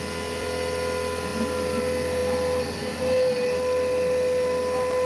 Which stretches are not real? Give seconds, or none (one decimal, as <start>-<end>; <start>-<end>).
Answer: none